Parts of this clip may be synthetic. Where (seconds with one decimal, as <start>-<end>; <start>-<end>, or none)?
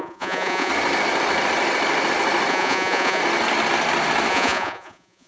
0.0-0.7; 2.5-3.2; 4.3-5.3